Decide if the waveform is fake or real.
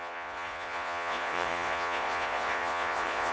fake